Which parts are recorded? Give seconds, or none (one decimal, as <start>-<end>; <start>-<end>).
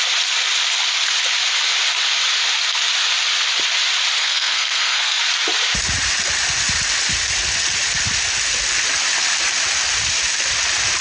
0.0-4.2; 5.2-11.0